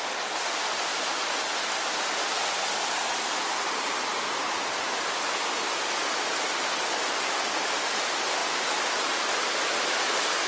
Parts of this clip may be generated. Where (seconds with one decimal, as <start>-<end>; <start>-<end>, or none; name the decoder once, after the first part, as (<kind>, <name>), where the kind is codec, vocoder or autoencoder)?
none